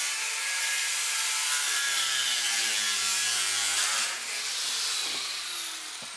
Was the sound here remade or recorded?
remade